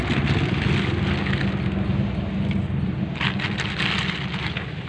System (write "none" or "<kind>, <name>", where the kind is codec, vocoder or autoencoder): none